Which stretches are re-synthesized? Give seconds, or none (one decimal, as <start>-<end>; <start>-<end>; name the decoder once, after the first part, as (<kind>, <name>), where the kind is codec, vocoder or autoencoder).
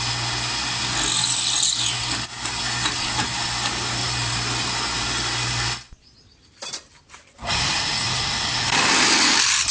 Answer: 4.0-7.8 (vocoder, BigVGAN v2)